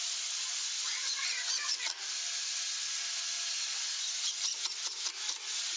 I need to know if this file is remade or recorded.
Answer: recorded